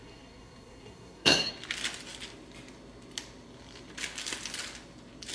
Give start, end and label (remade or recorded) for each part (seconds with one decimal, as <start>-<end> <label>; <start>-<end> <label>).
0.0-1.5 remade; 1.5-5.3 recorded